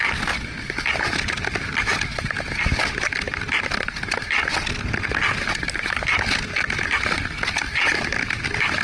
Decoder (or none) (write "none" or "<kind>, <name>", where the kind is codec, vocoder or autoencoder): none